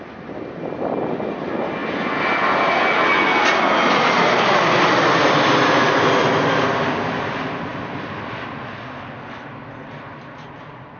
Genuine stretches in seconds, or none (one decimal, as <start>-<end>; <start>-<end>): 0.0-11.0